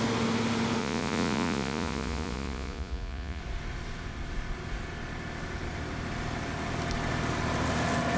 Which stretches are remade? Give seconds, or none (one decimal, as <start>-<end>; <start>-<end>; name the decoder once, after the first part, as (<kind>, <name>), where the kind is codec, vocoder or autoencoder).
0.8-3.4 (vocoder, Vocos)

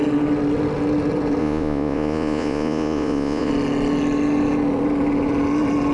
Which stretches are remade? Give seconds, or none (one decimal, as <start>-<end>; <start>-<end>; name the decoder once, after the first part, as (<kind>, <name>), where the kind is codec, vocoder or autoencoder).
1.4-3.5 (vocoder, Vocos)

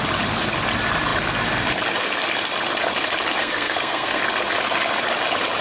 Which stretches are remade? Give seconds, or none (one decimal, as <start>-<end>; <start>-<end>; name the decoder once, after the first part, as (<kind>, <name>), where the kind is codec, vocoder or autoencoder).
3.4-4.2 (codec, SNAC)

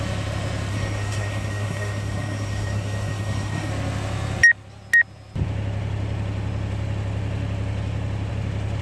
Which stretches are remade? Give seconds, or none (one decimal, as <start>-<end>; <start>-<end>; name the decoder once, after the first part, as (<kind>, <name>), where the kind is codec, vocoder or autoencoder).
0.7-3.7 (codec, SNAC)

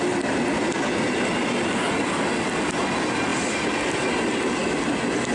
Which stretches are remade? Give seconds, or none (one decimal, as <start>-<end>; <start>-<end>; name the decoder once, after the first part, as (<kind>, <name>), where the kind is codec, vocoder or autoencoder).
0.6-1.3 (vocoder, BigVGAN v2); 3.3-4.1